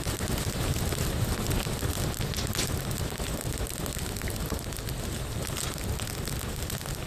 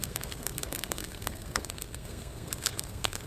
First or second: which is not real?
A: second